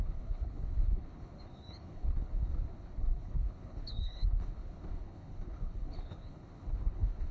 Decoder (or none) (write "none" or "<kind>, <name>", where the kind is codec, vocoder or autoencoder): codec, HILCodec